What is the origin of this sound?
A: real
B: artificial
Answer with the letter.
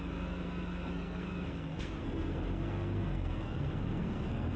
B